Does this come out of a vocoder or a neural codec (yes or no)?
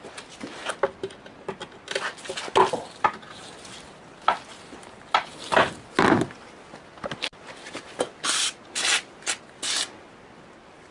no